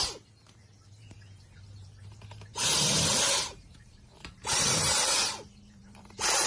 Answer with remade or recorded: remade